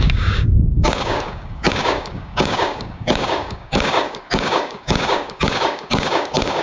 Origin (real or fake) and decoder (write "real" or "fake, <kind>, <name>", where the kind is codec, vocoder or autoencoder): fake, codec, DAC